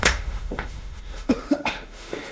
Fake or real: fake